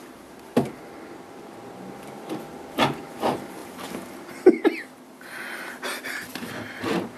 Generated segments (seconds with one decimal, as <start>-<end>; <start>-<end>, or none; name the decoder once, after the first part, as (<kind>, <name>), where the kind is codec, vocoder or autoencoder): none